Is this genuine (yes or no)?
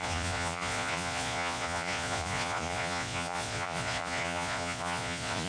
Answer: no